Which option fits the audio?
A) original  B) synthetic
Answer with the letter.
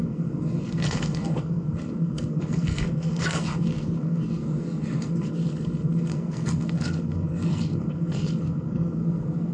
B